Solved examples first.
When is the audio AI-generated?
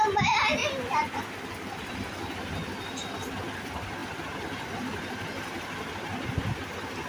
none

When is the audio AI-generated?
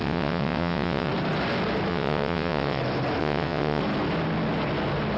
0.0-1.1 (vocoder, WaveNeXt); 1.9-2.8; 3.2-3.8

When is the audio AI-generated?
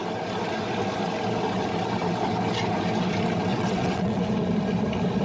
3.5-4.3 (vocoder, WaveNeXt)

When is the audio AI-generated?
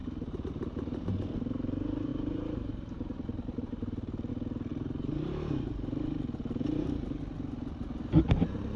0.0-1.1 (vocoder, BigVGAN v2); 2.1-4.3; 4.7-7.2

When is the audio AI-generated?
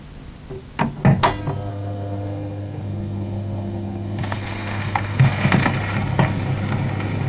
1.7-5.5 (codec, SNAC)